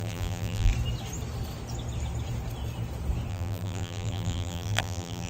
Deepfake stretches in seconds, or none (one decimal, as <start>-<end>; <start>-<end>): 0.0-0.7; 3.3-5.3